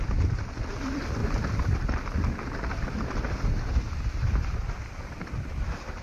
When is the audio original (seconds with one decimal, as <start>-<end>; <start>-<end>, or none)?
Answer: 0.0-1.2; 1.7-6.0